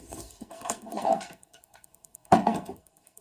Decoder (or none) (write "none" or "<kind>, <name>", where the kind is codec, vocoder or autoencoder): codec, SNAC